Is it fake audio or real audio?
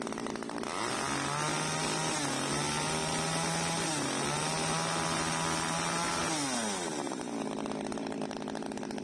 real